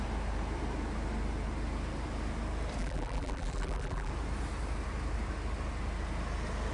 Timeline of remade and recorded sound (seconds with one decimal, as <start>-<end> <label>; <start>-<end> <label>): 0.0-2.8 recorded; 2.8-4.1 remade; 4.1-6.7 recorded